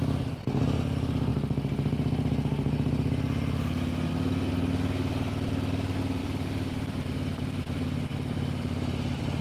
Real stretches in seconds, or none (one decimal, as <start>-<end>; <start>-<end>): 1.3-6.2